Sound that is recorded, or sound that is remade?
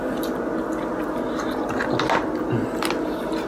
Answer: recorded